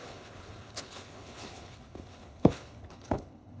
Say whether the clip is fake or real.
fake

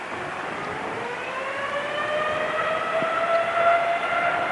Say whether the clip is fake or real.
real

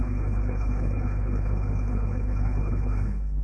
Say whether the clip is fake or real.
fake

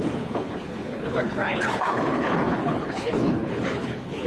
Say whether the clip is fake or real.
fake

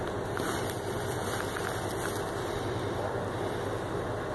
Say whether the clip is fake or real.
real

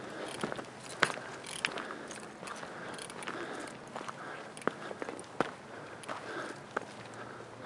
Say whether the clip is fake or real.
real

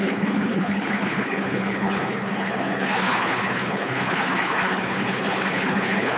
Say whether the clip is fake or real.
fake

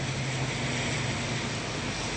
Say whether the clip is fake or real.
real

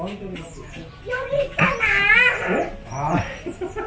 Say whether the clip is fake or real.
real